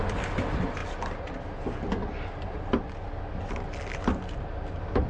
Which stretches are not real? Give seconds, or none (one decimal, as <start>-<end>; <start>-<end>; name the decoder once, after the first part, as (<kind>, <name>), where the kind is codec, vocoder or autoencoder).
none